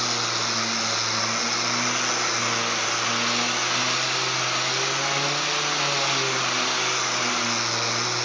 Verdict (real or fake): real